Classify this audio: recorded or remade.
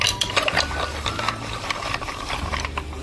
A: remade